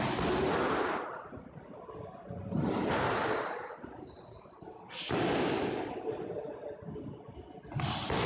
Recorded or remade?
recorded